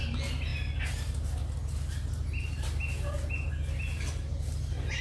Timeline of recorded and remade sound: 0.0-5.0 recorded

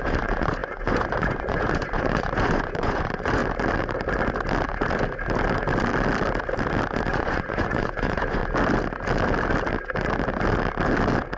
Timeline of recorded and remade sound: 0.0-3.4 remade; 3.4-7.1 recorded; 7.1-8.4 remade; 8.4-11.4 recorded

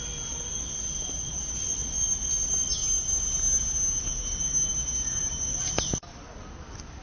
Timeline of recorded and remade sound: 0.0-7.0 recorded